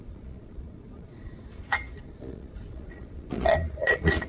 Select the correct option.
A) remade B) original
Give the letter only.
A